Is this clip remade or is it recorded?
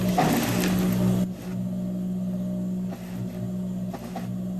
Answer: recorded